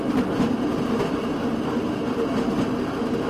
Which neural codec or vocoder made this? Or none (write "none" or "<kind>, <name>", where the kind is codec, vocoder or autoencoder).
none